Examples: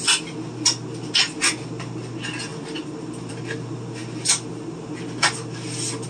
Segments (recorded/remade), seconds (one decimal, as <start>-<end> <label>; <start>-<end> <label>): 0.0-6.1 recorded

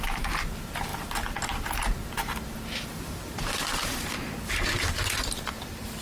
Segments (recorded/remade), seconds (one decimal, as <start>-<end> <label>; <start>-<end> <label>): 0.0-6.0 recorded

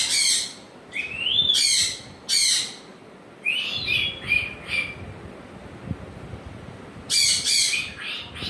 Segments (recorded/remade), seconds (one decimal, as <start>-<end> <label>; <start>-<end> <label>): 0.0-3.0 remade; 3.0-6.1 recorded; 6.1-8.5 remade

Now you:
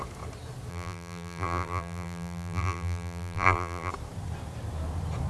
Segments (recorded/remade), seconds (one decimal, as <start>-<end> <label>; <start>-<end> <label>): 0.0-0.7 recorded; 0.7-3.9 remade; 3.9-5.3 recorded

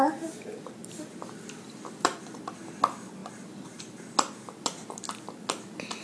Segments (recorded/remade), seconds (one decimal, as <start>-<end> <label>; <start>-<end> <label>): 0.0-0.8 recorded; 0.8-2.4 remade; 2.4-3.2 recorded; 3.2-3.8 remade; 3.8-6.0 recorded